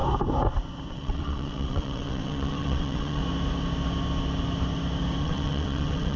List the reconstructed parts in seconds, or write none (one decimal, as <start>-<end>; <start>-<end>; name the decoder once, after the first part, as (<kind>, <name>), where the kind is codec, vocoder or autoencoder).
0.9-3.2 (vocoder, WaveNeXt); 5.2-6.2